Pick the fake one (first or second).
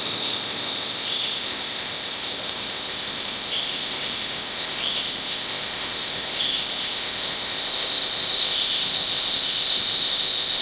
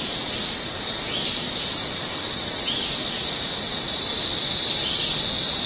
first